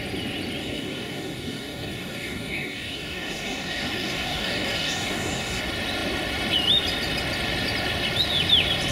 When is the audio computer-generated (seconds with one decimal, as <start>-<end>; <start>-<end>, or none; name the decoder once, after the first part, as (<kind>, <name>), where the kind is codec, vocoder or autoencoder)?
0.6-5.6 (codec, DAC)